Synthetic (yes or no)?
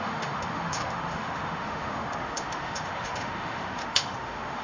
yes